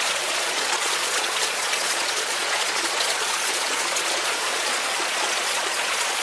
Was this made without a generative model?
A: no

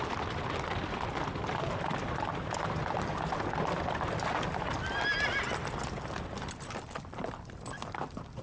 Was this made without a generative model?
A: yes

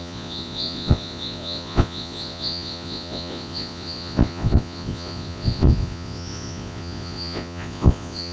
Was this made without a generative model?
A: no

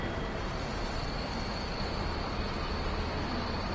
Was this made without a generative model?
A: yes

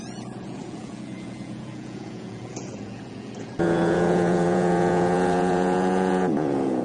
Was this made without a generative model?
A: no